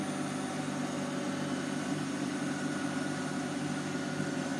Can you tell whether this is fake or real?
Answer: real